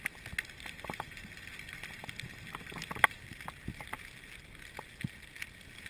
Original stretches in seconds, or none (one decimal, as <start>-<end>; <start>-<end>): 0.0-5.9